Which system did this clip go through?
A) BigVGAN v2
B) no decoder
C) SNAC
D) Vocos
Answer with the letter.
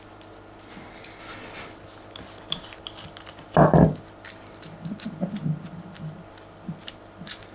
B